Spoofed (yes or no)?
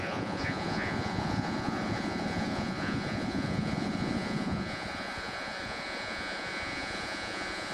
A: yes